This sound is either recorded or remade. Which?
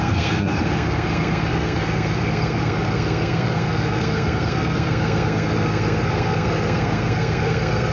remade